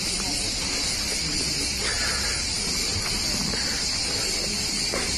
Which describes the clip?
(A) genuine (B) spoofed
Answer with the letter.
B